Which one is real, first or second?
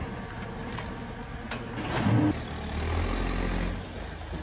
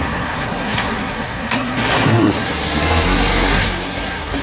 first